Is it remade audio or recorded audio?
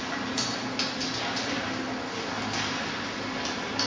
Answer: recorded